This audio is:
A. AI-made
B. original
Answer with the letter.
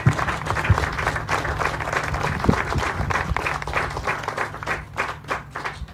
B